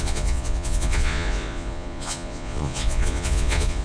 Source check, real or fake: fake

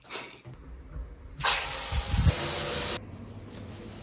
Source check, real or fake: real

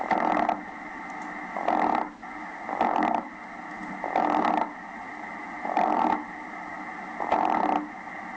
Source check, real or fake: real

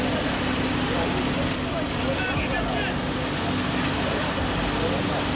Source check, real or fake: real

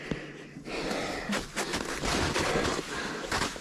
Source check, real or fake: real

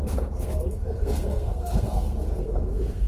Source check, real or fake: fake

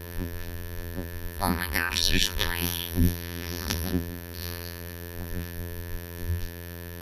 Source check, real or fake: fake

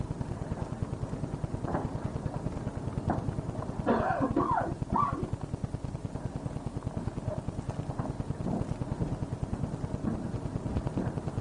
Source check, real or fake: real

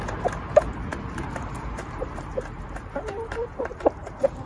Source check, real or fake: fake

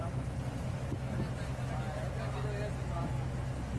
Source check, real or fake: real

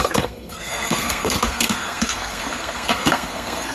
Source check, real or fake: fake